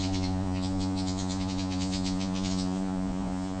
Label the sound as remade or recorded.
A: remade